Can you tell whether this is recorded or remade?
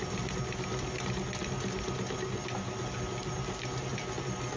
recorded